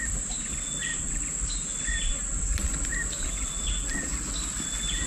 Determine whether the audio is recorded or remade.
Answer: recorded